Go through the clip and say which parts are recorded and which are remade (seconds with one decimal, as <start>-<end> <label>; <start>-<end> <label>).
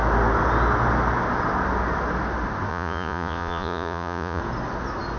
0.0-2.7 recorded; 2.7-4.4 remade; 4.4-5.2 recorded